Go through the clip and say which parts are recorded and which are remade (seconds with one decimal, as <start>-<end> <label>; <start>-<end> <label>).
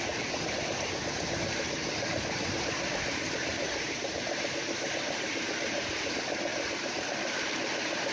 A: 0.0-1.8 recorded; 1.8-6.1 remade; 6.1-6.5 recorded; 6.5-7.5 remade; 7.5-8.1 recorded